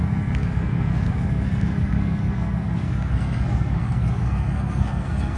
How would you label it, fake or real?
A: fake